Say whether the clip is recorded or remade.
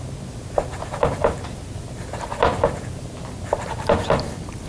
recorded